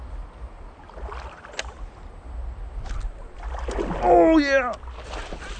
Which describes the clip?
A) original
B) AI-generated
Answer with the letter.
A